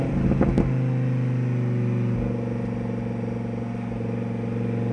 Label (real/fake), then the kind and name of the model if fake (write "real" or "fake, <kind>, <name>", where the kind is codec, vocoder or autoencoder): real